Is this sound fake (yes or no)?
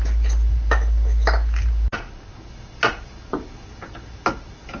no